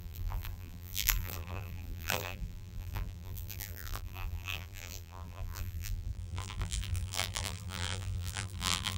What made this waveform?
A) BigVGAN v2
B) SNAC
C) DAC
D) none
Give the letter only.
A